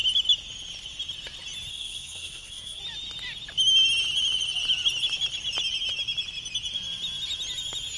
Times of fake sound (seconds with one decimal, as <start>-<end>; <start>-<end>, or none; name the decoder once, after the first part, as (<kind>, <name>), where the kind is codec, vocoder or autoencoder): 1.7-2.8 (codec, SNAC)